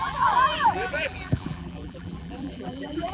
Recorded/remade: remade